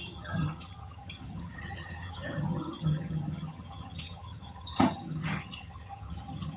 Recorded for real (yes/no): no